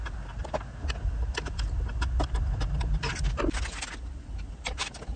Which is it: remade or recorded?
recorded